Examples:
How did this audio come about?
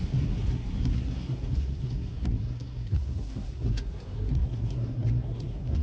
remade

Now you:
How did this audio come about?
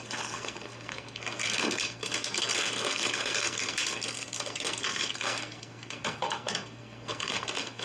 remade